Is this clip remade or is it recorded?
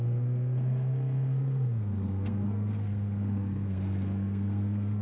remade